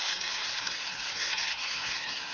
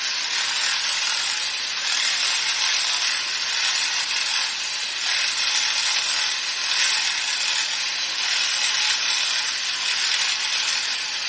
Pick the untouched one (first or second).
second